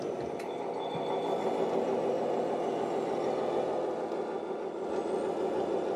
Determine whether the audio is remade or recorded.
recorded